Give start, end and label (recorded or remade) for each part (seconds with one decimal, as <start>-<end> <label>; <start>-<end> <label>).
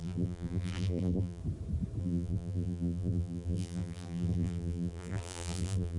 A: 0.0-1.4 remade; 1.4-2.0 recorded; 2.0-6.0 remade